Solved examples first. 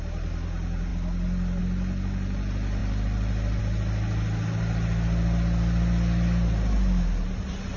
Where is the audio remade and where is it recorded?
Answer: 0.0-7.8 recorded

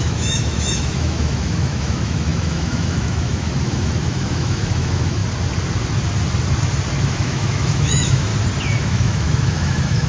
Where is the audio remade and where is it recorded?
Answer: 0.0-5.2 remade; 5.2-7.1 recorded; 7.1-8.3 remade; 8.3-8.8 recorded; 8.8-10.1 remade

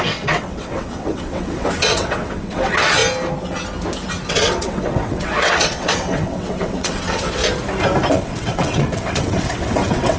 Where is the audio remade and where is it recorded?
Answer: 0.0-3.0 remade; 3.0-4.3 recorded; 4.3-7.4 remade; 7.4-8.1 recorded; 8.1-10.2 remade